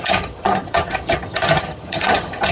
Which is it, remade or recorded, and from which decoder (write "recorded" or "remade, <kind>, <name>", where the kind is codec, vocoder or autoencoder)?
remade, vocoder, HiFi-GAN